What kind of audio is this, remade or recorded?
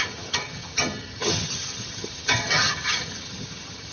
remade